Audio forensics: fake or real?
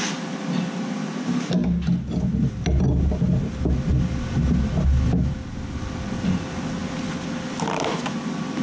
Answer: real